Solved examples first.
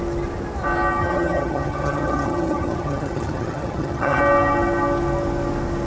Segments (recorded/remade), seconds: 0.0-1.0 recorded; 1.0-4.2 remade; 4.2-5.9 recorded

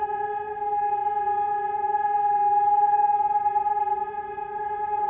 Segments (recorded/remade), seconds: 0.0-5.1 recorded

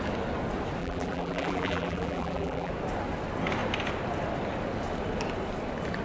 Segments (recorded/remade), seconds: 0.0-0.8 recorded; 0.8-2.7 remade; 2.7-6.0 recorded

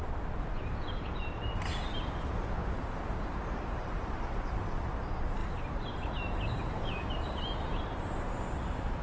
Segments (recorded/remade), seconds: 0.0-2.6 recorded; 2.6-4.1 remade; 4.1-5.4 recorded; 5.4-8.3 remade; 8.3-9.0 recorded

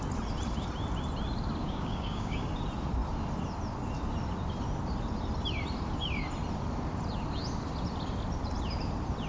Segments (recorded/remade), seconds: 0.0-1.6 recorded; 1.6-2.4 remade; 2.4-9.3 recorded

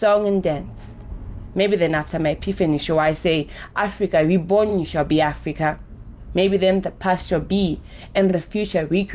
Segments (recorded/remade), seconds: 0.0-9.1 recorded